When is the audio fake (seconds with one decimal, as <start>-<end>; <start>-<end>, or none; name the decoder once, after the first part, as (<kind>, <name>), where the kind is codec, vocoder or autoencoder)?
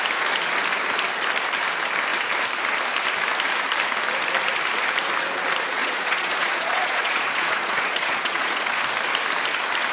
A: 5.8-8.8 (vocoder, Vocos)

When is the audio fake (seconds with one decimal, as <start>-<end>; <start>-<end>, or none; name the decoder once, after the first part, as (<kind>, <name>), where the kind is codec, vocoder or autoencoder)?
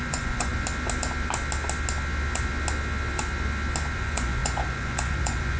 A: 0.0-0.5 (vocoder, Vocos); 3.9-5.6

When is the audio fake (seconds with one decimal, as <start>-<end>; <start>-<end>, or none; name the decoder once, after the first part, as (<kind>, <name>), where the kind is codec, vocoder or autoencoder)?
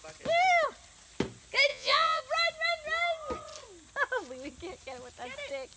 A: 1.7-2.2 (vocoder, Vocos)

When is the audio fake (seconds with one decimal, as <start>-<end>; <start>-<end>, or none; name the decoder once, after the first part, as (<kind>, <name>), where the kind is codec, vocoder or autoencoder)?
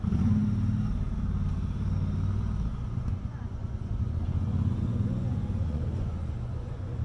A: 2.7-7.0 (vocoder, Vocos)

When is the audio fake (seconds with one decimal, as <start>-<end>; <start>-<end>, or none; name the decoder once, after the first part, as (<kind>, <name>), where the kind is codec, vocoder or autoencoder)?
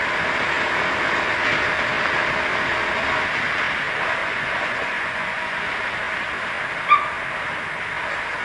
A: 4.2-5.7 (vocoder, Vocos)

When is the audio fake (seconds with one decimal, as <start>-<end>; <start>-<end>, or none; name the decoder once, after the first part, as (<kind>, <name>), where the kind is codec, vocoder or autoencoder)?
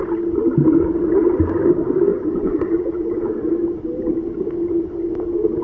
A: 2.1-3.5 (vocoder, Vocos)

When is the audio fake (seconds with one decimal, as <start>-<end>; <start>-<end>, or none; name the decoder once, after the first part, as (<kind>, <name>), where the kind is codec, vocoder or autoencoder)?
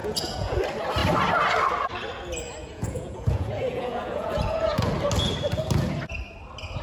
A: 0.0-0.6 (vocoder, Vocos); 2.6-4.9